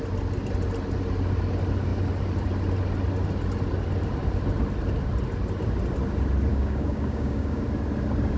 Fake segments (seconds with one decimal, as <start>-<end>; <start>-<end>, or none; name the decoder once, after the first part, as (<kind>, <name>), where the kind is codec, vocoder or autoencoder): 6.5-7.6 (codec, DAC)